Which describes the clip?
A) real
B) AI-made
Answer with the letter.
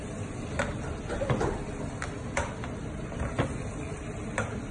A